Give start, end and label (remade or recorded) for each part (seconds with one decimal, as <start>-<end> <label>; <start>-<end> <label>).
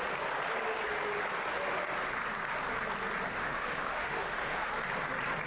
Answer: 0.0-3.3 recorded; 3.3-4.7 remade; 4.7-5.5 recorded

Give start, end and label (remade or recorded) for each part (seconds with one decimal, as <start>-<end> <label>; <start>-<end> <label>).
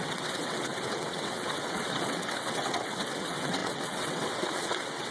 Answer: 0.0-5.1 remade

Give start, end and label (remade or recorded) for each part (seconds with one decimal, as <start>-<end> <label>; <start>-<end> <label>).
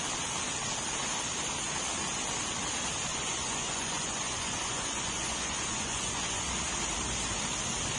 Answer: 0.0-3.1 recorded; 3.1-6.6 remade; 6.6-8.0 recorded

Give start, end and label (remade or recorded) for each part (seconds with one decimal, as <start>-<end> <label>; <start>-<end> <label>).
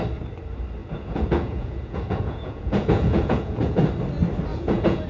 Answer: 0.0-0.8 recorded; 0.8-3.9 remade; 3.9-4.5 recorded; 4.5-5.1 remade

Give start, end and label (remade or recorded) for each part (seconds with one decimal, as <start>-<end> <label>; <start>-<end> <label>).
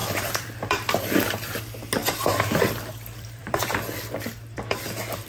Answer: 0.0-1.6 remade; 1.6-2.0 recorded; 2.0-4.8 remade; 4.8-5.3 recorded